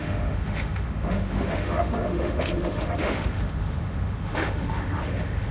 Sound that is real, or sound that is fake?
fake